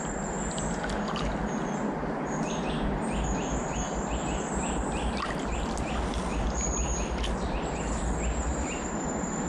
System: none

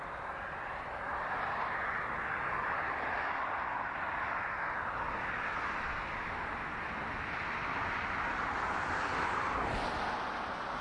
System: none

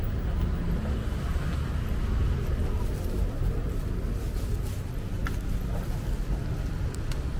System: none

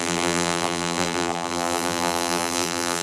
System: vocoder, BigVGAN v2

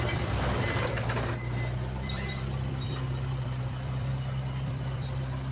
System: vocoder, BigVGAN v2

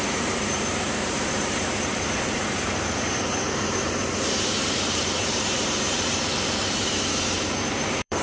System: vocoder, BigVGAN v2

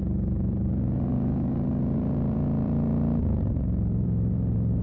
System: vocoder, BigVGAN v2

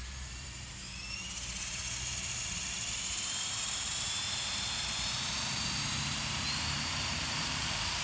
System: vocoder, BigVGAN v2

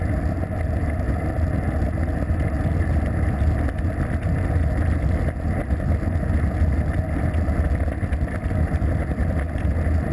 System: none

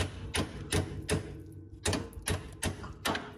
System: none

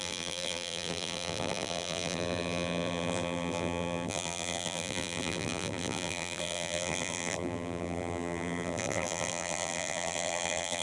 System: vocoder, BigVGAN v2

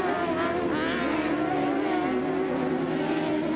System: none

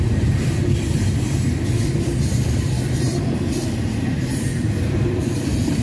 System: vocoder, BigVGAN v2